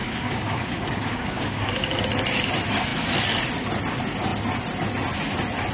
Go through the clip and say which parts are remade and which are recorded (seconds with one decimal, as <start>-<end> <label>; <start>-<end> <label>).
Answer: 0.0-2.0 remade; 2.0-5.7 recorded

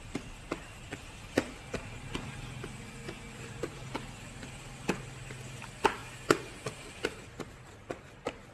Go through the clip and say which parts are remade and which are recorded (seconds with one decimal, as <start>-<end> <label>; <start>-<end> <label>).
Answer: 0.0-8.5 recorded